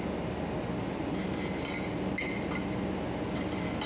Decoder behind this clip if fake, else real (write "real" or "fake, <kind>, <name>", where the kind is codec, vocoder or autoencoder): real